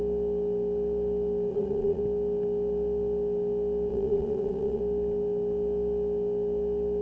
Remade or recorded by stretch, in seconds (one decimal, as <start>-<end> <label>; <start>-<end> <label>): 0.0-1.5 recorded; 1.5-2.0 remade; 2.0-3.9 recorded; 3.9-4.8 remade; 4.8-7.0 recorded